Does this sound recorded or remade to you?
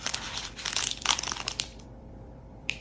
remade